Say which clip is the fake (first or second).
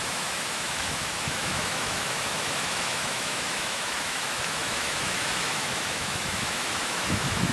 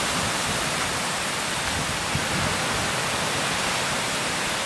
first